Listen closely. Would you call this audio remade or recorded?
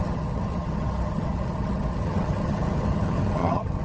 remade